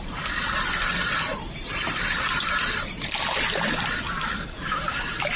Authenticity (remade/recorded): remade